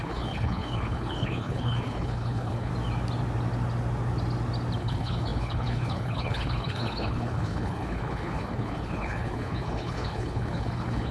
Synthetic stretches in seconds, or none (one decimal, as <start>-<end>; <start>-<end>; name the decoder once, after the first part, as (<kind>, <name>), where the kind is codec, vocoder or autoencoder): 0.0-2.7 (codec, HILCodec); 4.8-11.1

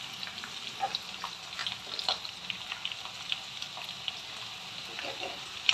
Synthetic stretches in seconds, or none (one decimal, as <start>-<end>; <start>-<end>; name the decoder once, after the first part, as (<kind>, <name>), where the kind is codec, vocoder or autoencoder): none

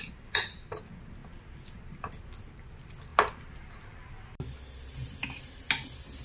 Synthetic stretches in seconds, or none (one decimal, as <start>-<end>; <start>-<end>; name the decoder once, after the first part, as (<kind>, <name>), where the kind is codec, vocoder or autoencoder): none

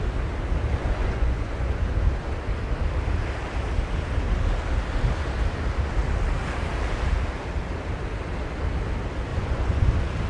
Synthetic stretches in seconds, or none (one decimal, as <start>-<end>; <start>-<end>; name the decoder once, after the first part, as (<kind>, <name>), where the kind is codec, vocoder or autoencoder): 0.8-1.9 (vocoder, Vocos); 9.3-9.9

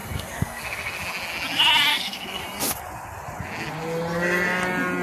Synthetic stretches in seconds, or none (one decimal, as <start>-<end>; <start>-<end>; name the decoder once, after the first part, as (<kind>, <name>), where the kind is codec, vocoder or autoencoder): 0.0-1.0 (codec, SNAC); 1.9-2.4

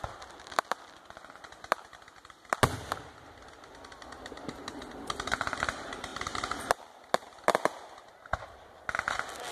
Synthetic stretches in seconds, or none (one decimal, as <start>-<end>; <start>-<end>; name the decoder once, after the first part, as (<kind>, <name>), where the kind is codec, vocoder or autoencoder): none

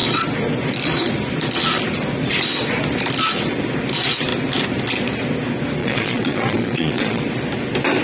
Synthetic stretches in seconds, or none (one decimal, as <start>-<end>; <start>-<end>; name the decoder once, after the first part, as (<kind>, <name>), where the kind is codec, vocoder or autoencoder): 5.8-7.2 (vocoder, Vocos)